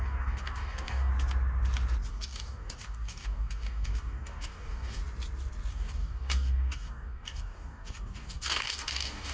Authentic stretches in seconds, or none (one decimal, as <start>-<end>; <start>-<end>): 1.1-2.1; 5.0-5.7